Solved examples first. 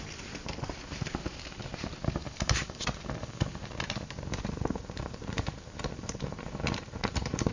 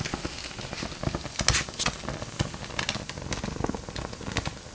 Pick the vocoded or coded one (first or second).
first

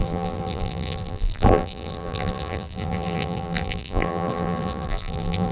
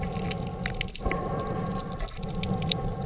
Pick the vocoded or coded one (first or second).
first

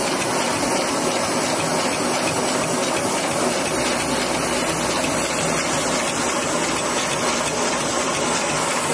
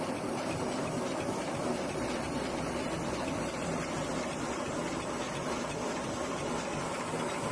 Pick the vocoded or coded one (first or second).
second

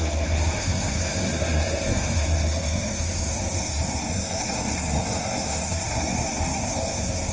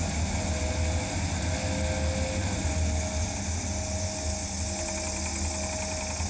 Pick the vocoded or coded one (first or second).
first